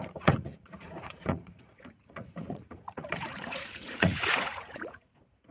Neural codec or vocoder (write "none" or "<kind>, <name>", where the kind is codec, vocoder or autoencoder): vocoder, Vocos